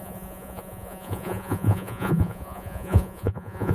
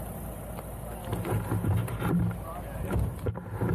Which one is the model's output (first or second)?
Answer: first